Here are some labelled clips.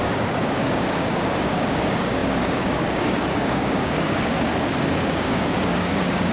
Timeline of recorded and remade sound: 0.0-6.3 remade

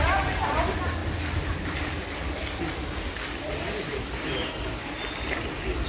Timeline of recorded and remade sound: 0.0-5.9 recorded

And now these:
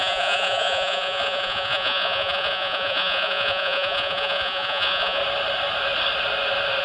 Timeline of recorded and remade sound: 0.0-5.2 remade; 5.2-6.8 recorded